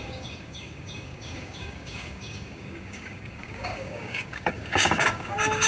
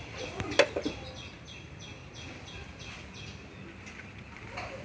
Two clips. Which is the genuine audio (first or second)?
second